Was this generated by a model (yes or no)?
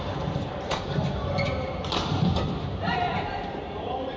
yes